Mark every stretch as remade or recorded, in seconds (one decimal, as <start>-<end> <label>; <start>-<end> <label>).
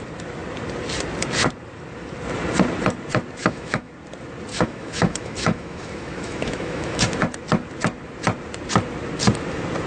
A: 0.0-3.4 recorded; 3.4-3.9 remade; 3.9-4.5 recorded; 4.5-7.1 remade; 7.1-9.9 recorded